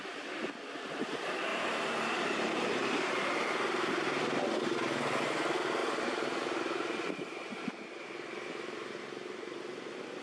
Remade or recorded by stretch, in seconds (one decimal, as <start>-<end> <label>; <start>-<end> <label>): 0.0-1.5 recorded; 1.5-4.2 remade; 4.2-5.8 recorded; 5.8-8.1 remade; 8.1-10.2 recorded